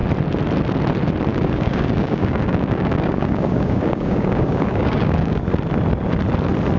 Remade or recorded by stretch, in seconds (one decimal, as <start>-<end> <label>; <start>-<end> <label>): 0.0-1.3 recorded; 1.3-5.4 remade; 5.4-6.8 recorded